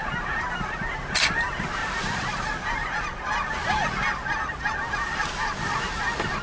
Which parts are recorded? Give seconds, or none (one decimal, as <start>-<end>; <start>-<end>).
0.7-1.8; 3.1-6.4